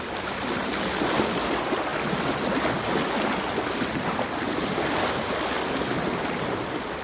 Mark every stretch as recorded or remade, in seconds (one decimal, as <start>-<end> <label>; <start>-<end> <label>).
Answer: 0.0-7.0 recorded

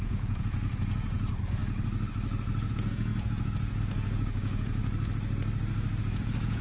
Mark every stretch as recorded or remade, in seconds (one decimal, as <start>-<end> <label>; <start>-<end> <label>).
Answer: 0.0-1.6 remade; 1.6-2.7 recorded; 2.7-4.8 remade; 4.8-6.0 recorded; 6.0-6.6 remade

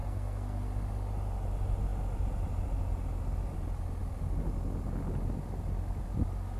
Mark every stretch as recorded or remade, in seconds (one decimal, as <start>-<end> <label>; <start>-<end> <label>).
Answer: 0.0-0.7 remade; 0.7-6.6 recorded

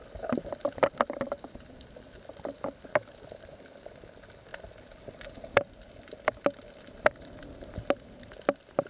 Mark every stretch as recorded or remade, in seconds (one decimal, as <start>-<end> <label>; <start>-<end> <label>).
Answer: 0.0-8.9 recorded

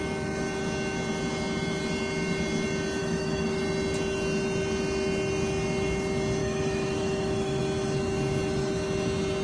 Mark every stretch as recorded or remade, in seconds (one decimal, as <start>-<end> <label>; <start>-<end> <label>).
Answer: 0.0-3.0 recorded; 3.0-3.6 remade; 3.6-6.4 recorded; 6.4-7.6 remade; 7.6-9.4 recorded

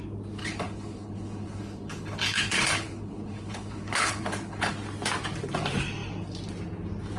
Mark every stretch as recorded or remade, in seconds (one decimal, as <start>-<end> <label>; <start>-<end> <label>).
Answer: 0.0-0.4 recorded; 0.4-4.7 remade; 4.7-7.2 recorded

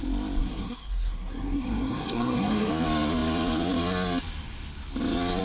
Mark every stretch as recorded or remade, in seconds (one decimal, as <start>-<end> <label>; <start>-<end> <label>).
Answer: 0.0-0.4 recorded; 0.4-2.7 remade; 2.7-5.4 recorded